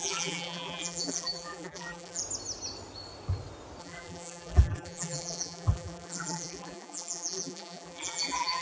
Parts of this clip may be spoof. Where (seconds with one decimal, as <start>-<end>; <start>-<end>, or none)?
0.0-2.2; 3.8-8.6